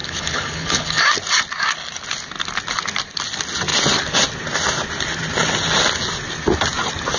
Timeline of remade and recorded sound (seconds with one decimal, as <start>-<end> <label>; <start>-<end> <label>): 0.0-1.0 remade; 1.0-7.2 recorded